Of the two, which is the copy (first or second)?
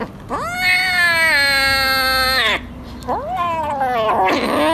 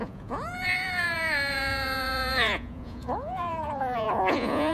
second